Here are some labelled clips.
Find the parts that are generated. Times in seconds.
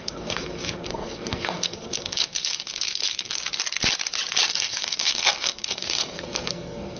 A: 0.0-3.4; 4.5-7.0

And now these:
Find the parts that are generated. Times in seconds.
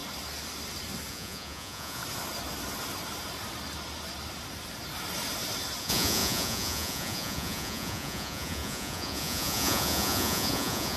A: 1.1-2.0; 5.8-11.0